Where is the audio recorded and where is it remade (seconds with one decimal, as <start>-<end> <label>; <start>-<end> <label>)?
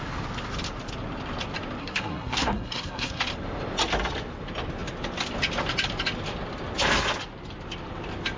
0.0-1.8 recorded; 1.8-3.2 remade; 3.2-8.4 recorded